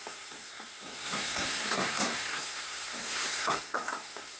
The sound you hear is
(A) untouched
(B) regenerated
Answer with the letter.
B